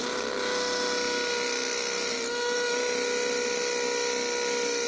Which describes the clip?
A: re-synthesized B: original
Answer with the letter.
B